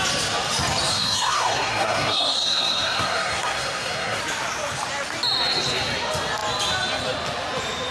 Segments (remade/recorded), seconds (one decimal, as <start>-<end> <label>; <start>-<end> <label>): 0.0-0.9 recorded; 0.9-4.2 remade; 4.2-7.9 recorded